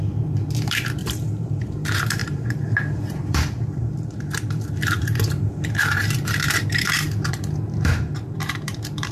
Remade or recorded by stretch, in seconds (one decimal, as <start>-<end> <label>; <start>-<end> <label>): 0.0-9.1 remade